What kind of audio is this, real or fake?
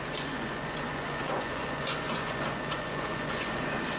fake